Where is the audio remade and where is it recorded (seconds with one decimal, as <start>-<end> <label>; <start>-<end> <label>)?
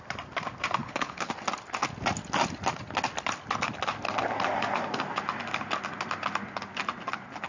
0.0-0.8 recorded; 0.8-1.3 remade; 1.3-7.5 recorded